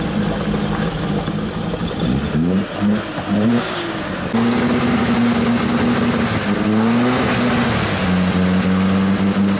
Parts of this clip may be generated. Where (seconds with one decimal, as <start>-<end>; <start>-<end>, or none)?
3.5-4.1

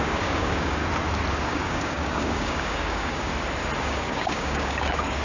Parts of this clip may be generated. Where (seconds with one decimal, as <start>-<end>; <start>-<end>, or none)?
0.0-0.8; 1.3-3.3; 3.8-5.2

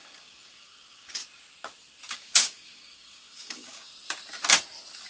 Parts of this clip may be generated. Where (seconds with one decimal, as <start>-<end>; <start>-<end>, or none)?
0.0-1.2; 2.1-3.9